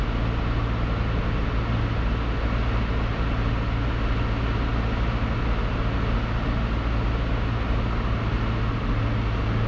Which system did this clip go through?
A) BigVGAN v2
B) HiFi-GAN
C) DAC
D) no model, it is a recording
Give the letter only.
D